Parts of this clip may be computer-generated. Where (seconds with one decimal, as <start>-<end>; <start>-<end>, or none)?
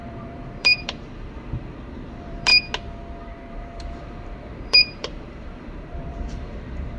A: 0.0-2.5; 3.5-7.0